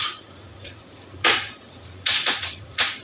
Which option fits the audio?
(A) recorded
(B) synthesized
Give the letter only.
B